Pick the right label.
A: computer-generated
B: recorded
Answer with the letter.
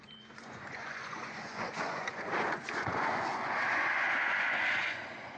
A